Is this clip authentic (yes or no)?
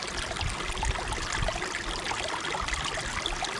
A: yes